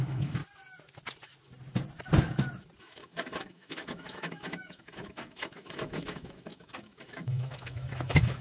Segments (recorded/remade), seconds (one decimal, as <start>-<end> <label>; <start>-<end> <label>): 0.0-0.4 remade; 0.4-2.8 recorded; 2.8-8.4 remade